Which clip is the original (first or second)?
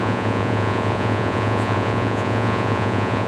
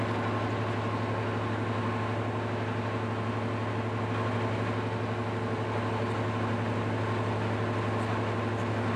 second